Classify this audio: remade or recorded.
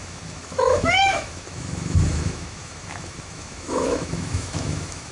remade